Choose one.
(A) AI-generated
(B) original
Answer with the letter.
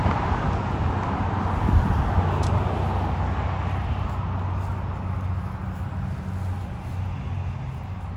B